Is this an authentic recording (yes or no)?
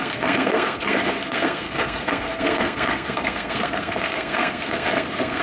no